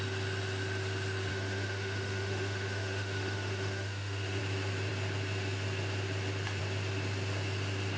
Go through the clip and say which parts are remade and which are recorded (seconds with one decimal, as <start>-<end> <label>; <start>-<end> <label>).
0.0-1.3 recorded; 1.3-4.4 remade; 4.4-8.0 recorded